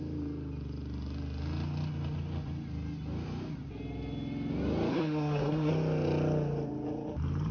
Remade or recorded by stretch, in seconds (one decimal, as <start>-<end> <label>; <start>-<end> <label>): 0.0-4.9 recorded; 4.9-5.7 remade; 5.7-7.5 recorded